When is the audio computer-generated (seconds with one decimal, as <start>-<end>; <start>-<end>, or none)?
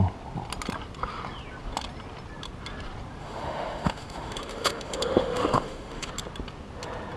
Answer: 3.2-6.1